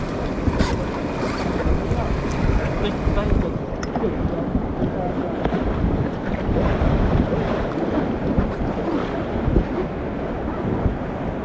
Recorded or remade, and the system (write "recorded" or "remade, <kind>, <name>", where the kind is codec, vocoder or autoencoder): recorded